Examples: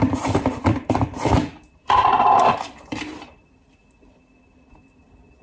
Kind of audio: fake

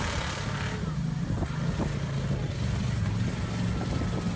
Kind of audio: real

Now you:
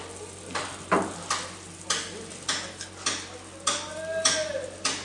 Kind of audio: real